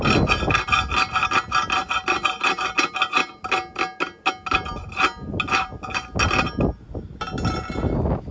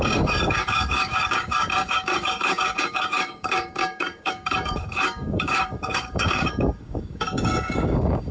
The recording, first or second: first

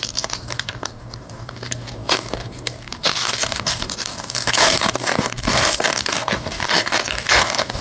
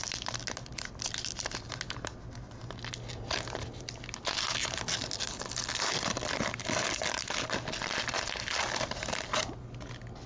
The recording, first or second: second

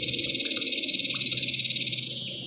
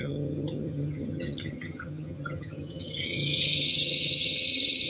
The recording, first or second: first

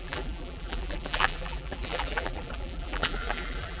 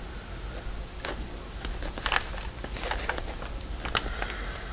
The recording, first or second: second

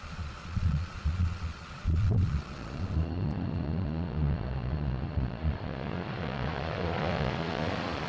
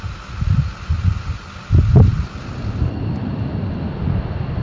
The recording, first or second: second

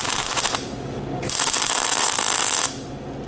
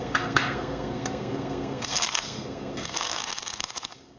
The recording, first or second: first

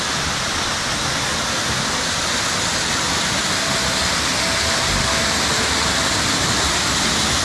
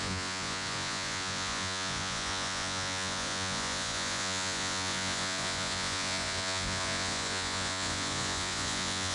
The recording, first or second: first